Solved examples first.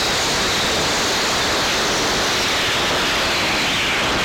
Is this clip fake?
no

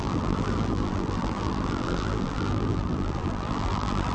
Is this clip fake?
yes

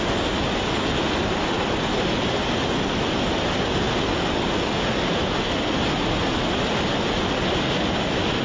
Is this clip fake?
no